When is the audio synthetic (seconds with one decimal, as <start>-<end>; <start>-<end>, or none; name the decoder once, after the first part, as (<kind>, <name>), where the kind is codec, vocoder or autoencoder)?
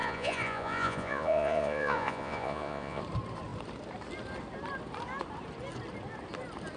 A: 0.0-3.0 (vocoder, Vocos)